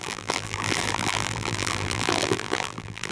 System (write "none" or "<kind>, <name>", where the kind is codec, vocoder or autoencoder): vocoder, BigVGAN v2